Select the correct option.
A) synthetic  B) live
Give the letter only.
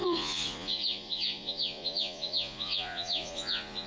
A